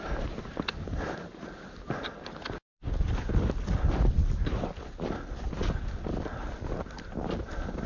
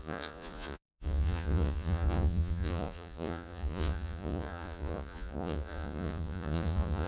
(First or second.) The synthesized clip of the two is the second